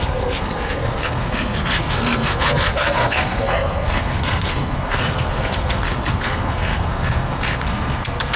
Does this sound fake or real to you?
fake